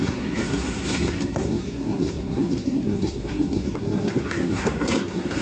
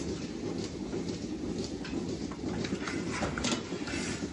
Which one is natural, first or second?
second